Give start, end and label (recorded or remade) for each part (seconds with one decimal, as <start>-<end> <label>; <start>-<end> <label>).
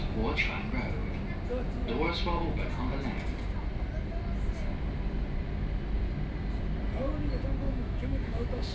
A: 0.0-7.6 recorded; 7.6-8.7 remade